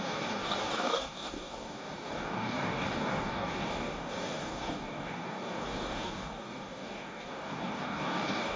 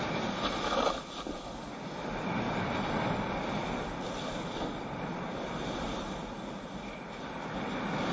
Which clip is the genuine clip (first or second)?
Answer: second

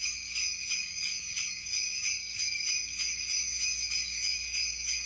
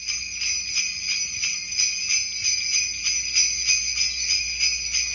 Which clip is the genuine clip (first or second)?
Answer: second